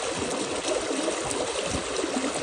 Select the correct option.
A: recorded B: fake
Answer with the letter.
A